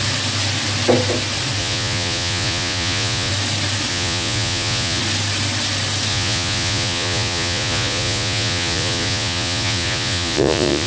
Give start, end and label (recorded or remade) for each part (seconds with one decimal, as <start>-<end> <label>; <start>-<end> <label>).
0.0-1.6 recorded; 1.6-3.3 remade; 3.3-3.9 recorded; 3.9-5.0 remade; 5.0-6.1 recorded; 6.1-10.9 remade